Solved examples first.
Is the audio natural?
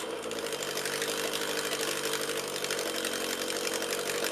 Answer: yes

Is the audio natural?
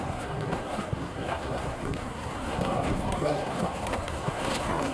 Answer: no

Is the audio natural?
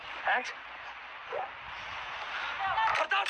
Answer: yes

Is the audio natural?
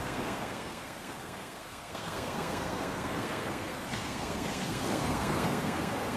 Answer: no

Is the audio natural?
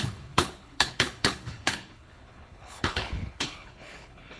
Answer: no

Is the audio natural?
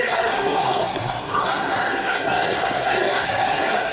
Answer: no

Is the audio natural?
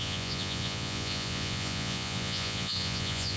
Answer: no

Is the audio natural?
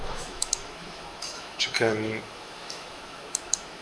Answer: no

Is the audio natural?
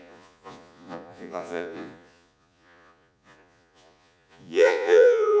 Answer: no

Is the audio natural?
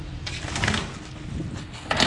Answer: yes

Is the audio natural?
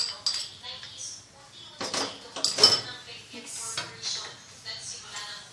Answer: yes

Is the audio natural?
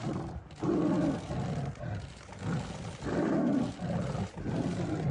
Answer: yes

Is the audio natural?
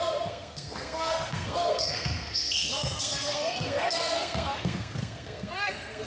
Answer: no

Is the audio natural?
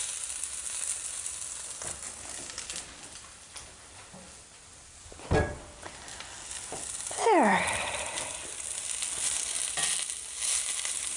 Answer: yes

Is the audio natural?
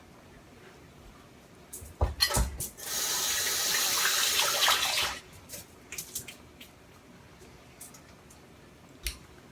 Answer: yes